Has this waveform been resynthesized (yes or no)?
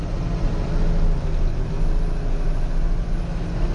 no